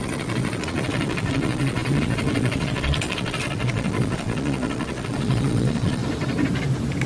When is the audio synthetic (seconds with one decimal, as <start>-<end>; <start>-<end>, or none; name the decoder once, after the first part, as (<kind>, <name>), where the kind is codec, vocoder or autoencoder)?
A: 0.0-6.0 (vocoder, Vocos)